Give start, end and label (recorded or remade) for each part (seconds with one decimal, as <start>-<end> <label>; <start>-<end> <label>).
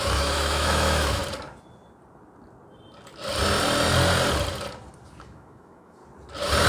0.0-1.2 remade; 1.2-5.2 recorded; 5.2-6.0 remade; 6.0-6.7 recorded